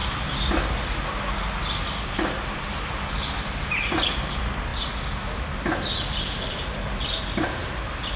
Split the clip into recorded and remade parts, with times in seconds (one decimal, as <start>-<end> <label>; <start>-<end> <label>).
0.0-8.2 recorded